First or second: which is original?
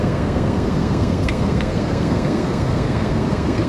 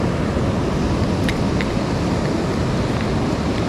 second